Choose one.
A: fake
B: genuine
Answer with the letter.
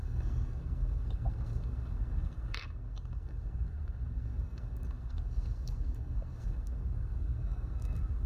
A